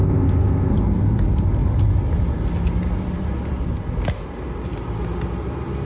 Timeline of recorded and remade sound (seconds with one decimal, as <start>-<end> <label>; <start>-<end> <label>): 0.0-0.7 remade; 0.7-5.8 recorded

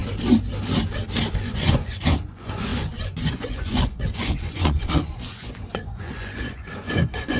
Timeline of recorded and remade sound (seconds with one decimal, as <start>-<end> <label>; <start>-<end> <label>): 0.0-1.3 recorded; 1.3-7.4 remade

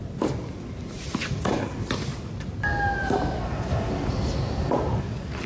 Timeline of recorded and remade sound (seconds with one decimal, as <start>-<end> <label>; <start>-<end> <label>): 0.0-1.1 recorded; 1.1-1.6 remade; 1.6-5.5 recorded

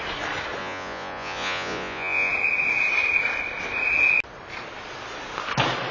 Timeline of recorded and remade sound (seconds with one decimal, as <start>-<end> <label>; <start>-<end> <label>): 0.0-0.6 recorded; 0.6-2.3 remade; 2.3-5.9 recorded

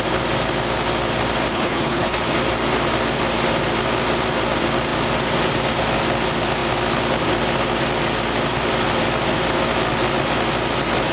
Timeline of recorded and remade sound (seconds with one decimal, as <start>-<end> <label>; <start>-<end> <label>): 0.0-1.5 recorded; 1.5-2.2 remade; 2.2-11.1 recorded